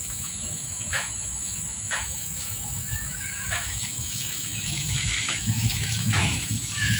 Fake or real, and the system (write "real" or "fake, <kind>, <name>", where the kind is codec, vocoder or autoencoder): fake, autoencoder, DAC-VAE